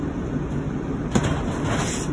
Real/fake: real